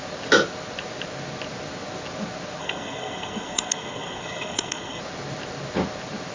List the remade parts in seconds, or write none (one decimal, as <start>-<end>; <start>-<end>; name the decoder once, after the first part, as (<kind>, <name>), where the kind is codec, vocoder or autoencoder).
2.6-5.0 (codec, SNAC)

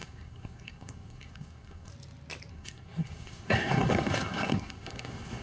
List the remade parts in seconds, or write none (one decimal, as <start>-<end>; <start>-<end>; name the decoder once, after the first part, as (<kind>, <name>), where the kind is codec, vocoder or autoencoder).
0.0-1.9 (codec, SNAC); 2.5-5.4